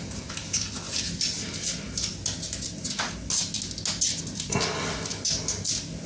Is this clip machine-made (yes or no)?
no